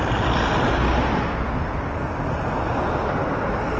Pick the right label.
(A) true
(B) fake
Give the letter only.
A